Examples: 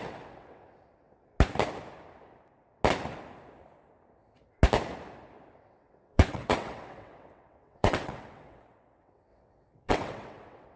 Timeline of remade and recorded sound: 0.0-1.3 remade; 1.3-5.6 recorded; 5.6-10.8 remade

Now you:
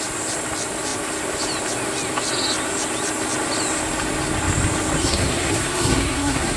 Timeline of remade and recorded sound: 0.0-5.0 recorded; 5.0-6.6 remade

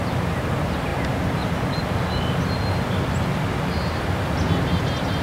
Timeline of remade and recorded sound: 0.0-5.2 recorded

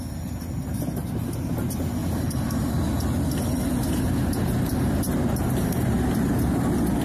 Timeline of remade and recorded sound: 0.0-7.0 recorded

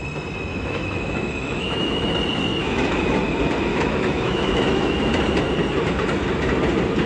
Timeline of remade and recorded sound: 0.0-0.5 recorded; 0.5-2.1 remade; 2.1-2.6 recorded; 2.6-3.2 remade; 3.2-3.7 recorded; 3.7-5.1 remade; 5.1-7.1 recorded

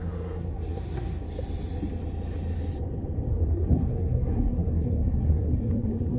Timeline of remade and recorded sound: 0.0-1.2 remade; 1.2-3.3 recorded; 3.3-6.2 remade

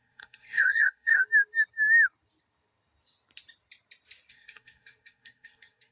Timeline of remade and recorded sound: 0.0-1.2 remade; 1.2-4.3 recorded; 4.3-5.9 remade